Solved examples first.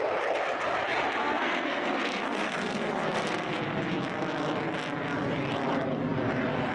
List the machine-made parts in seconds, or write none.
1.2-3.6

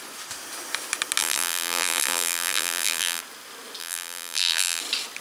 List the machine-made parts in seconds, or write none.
1.2-3.2; 3.8-4.8

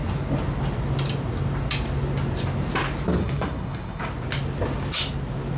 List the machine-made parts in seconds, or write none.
3.2-4.0

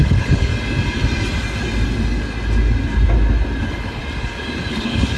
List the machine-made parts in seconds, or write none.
0.0-0.5; 3.6-4.0; 4.7-5.2